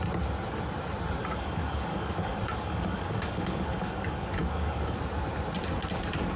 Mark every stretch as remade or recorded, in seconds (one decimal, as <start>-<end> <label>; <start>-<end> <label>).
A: 0.0-1.2 recorded; 1.2-5.0 remade; 5.0-6.4 recorded